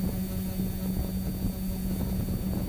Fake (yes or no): yes